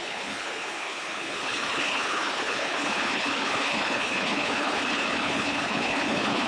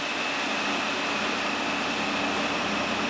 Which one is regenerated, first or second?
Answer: first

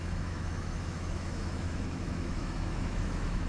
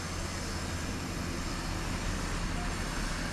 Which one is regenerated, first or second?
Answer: first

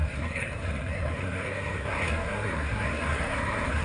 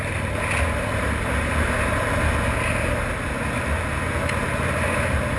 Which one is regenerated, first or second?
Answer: first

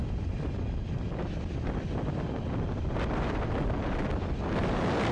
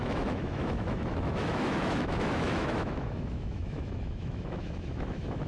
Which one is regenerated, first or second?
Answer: second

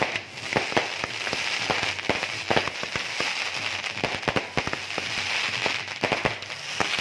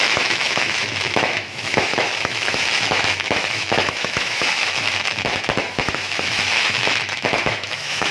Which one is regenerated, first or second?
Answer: second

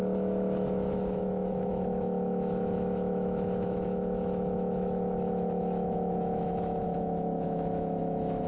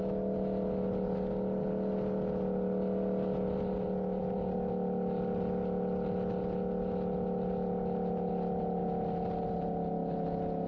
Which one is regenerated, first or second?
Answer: first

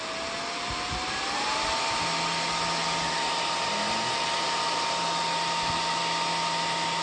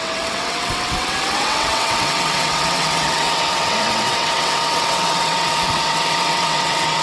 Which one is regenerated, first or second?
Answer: second